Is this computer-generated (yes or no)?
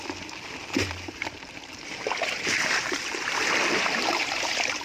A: yes